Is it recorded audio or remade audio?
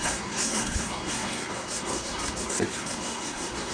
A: remade